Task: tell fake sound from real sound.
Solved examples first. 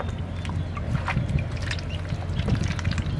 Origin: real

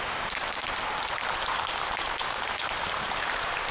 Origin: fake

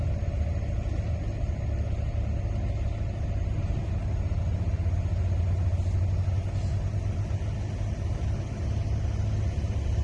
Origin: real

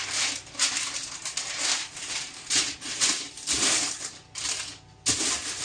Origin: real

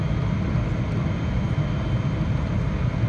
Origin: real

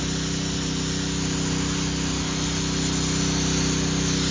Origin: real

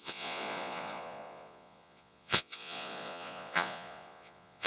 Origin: fake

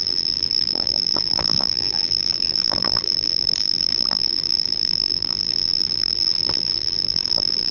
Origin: fake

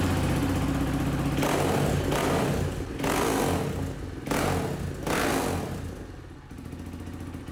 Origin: real